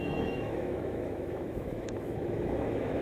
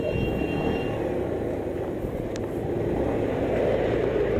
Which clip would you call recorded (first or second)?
second